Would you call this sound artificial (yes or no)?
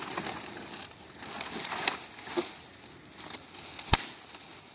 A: no